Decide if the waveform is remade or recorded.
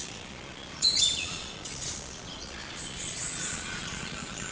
remade